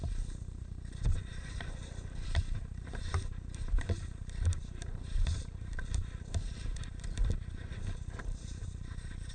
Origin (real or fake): fake